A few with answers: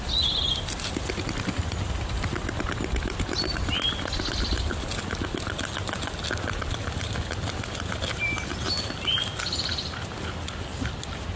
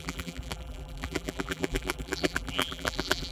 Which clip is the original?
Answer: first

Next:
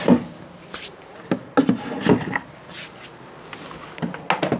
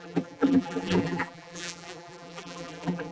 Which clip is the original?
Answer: first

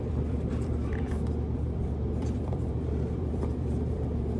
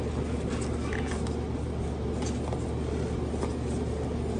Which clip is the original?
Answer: second